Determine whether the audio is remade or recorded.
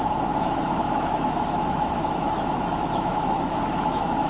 remade